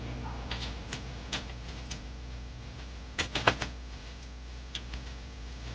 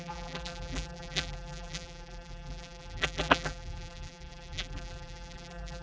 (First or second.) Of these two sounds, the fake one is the second